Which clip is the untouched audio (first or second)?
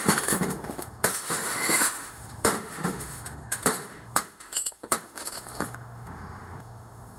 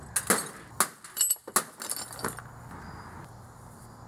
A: second